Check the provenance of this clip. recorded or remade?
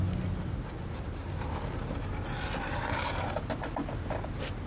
recorded